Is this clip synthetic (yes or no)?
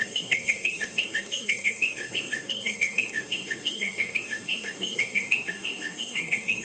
yes